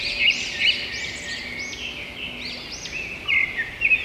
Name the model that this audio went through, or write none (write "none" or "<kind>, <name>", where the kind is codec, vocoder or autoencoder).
none